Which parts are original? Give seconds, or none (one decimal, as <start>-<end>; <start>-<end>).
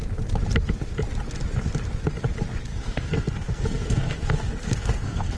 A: 0.0-2.7